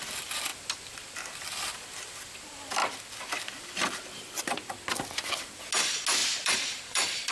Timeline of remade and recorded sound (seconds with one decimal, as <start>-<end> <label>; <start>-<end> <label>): 0.0-6.2 recorded; 6.2-7.3 remade